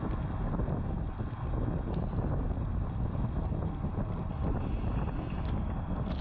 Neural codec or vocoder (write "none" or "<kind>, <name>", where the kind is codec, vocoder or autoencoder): none